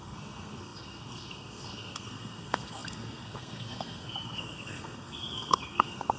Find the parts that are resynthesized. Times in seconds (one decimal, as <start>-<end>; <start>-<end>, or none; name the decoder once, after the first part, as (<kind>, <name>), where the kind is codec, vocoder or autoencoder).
0.0-6.2 (codec, SNAC)